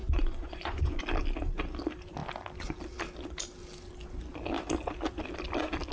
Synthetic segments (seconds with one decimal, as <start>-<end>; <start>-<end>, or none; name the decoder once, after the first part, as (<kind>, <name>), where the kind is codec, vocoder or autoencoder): 0.0-1.0 (vocoder, Vocos)

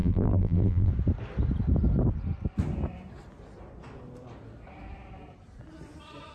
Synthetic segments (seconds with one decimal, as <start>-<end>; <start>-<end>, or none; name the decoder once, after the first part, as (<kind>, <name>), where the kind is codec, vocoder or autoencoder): 0.0-0.9 (vocoder, BigVGAN v2)

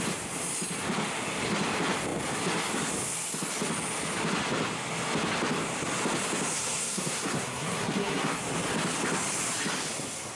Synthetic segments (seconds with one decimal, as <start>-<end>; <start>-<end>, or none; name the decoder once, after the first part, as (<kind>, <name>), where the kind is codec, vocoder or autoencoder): 6.6-8.4 (codec, SNAC)

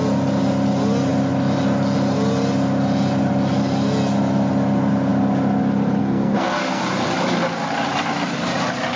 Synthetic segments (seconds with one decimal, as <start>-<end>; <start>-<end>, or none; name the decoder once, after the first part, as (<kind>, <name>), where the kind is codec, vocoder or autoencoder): 6.0-6.8 (codec, SNAC)